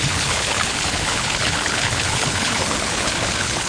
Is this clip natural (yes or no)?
no